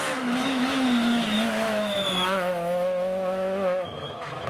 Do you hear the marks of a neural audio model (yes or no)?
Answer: yes